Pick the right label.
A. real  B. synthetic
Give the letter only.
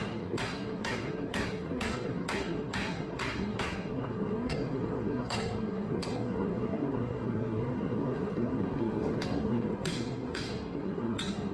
B